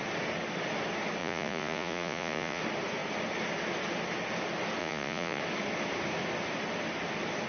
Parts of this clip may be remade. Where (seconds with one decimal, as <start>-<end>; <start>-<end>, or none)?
1.2-2.6; 4.8-5.4